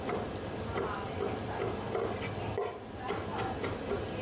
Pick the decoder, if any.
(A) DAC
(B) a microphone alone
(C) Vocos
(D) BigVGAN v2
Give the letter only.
B